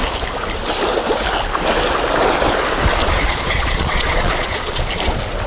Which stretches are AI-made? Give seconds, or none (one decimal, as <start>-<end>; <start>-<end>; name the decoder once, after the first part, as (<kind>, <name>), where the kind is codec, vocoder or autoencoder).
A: 3.0-4.8 (vocoder, Vocos)